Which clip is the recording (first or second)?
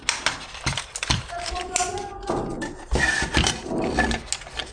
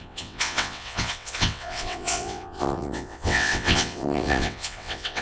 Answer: first